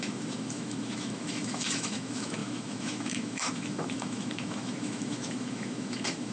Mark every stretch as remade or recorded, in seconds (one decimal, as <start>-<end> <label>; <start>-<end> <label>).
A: 0.0-6.3 remade